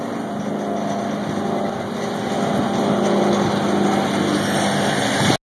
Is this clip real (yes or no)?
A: yes